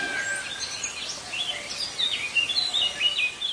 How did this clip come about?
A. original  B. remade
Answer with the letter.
A